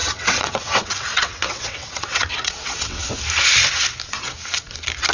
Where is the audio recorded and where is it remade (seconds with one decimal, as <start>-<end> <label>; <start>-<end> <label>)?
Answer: 0.0-3.1 remade; 3.1-5.1 recorded